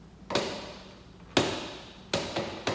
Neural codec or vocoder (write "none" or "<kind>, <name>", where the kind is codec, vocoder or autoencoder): none